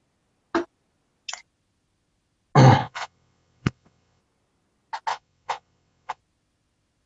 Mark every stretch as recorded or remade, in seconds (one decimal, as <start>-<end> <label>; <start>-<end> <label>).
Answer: 0.0-2.8 recorded; 2.8-4.2 remade; 4.2-5.1 recorded; 5.1-6.2 remade; 6.2-7.1 recorded

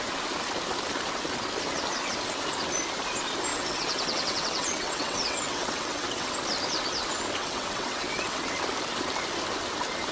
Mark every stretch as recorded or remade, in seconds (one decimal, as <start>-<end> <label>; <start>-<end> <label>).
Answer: 0.0-3.5 recorded; 3.5-6.3 remade; 6.3-7.4 recorded; 7.4-8.5 remade; 8.5-10.1 recorded

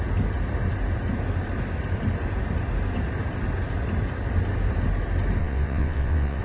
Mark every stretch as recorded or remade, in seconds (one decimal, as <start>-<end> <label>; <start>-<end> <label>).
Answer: 0.0-5.4 recorded; 5.4-6.4 remade